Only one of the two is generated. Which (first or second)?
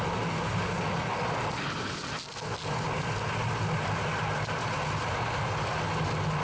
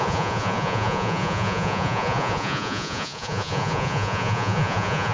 second